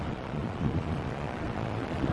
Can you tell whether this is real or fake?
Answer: fake